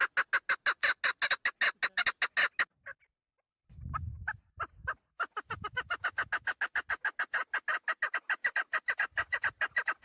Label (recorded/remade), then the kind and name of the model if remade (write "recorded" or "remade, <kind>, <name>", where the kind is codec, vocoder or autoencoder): recorded